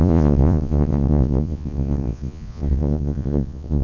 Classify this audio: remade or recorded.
remade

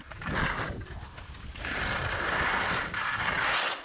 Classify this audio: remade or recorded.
recorded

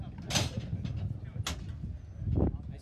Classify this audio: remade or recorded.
recorded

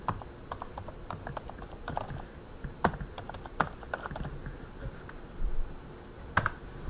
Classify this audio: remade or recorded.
recorded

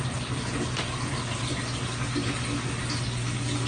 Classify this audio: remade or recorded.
recorded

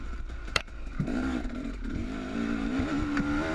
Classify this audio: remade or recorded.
remade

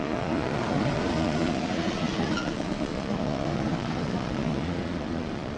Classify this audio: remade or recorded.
remade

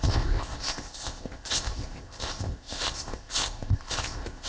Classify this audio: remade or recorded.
remade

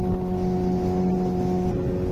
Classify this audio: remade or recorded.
recorded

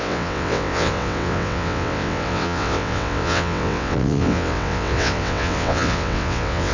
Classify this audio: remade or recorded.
remade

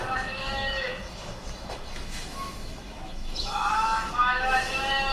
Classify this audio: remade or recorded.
remade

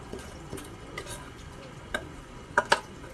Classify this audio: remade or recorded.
remade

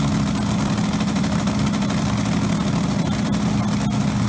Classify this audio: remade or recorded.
recorded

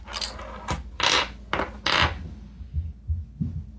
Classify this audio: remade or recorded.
recorded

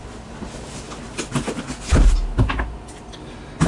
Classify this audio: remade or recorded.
recorded